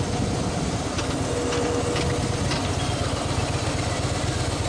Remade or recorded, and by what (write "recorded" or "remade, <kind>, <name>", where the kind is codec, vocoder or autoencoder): recorded